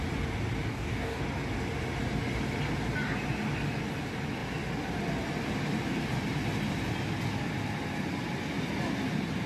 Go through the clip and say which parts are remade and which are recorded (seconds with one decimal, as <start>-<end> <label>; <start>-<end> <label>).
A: 0.0-0.7 recorded; 0.7-1.2 remade; 1.2-9.5 recorded